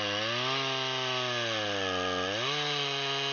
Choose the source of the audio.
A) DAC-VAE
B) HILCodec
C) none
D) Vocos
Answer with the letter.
C